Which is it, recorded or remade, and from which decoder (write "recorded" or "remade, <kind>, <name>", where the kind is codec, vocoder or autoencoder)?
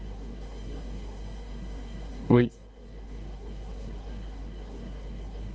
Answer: remade, codec, SNAC